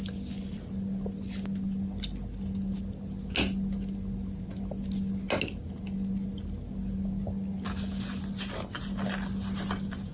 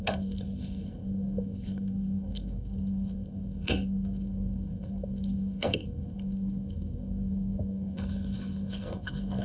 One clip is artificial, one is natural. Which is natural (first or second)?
first